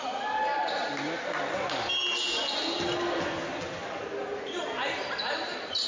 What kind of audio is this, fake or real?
real